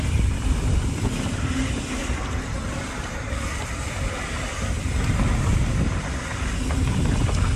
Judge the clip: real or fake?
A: real